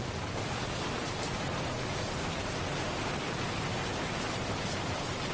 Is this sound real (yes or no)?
no